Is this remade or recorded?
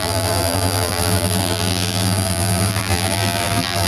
remade